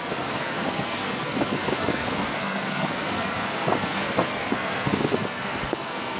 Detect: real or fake fake